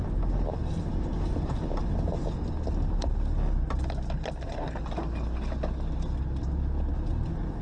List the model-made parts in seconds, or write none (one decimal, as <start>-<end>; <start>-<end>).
0.9-1.8